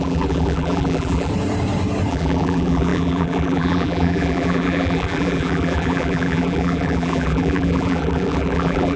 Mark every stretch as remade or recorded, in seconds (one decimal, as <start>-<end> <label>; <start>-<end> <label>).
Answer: 0.0-1.3 remade; 1.3-2.1 recorded; 2.1-9.0 remade